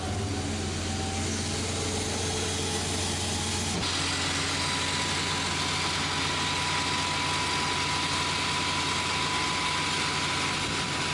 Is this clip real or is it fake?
real